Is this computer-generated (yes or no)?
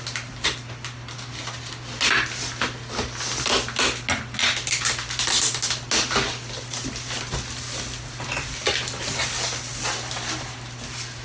no